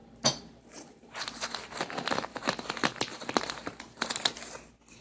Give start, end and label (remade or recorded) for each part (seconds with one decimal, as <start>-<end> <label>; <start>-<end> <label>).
0.0-5.0 recorded